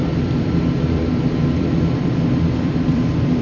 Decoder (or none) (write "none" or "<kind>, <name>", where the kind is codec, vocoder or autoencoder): vocoder, BigVGAN v2